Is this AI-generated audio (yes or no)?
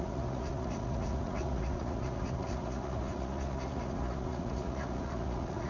yes